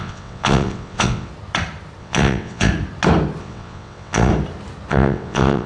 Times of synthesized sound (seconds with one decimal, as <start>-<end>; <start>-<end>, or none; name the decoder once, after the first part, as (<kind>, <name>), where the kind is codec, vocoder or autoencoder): 0.0-1.3 (vocoder, WaveNeXt); 2.0-2.7; 3.4-4.3; 4.9-5.7